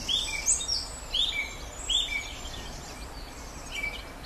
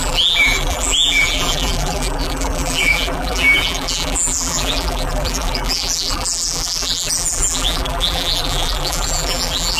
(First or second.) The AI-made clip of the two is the second